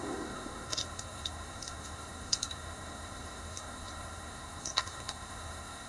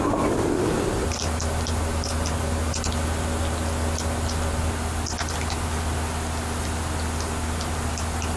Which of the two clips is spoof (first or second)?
first